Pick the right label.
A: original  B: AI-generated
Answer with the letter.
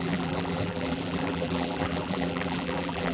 B